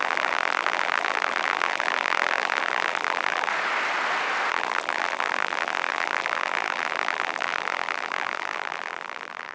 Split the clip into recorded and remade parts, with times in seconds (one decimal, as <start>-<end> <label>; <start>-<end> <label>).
0.0-3.5 remade; 3.5-4.5 recorded; 4.5-9.5 remade